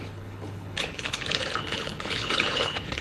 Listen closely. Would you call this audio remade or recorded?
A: remade